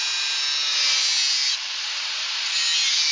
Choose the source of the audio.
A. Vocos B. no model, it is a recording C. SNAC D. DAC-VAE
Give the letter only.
B